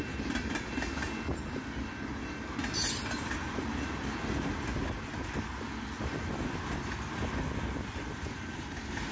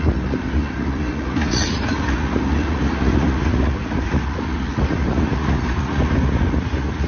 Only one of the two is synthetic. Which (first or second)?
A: second